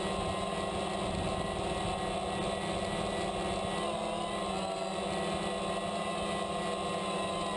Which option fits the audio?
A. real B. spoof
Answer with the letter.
A